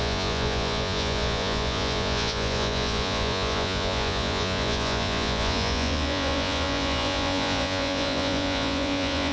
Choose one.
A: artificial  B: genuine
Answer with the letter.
A